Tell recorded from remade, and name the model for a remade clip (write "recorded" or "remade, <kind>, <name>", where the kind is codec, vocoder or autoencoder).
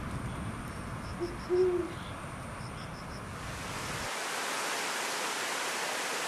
recorded